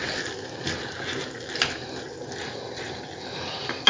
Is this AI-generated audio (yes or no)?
no